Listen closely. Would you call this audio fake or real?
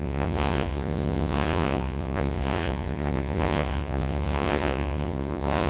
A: fake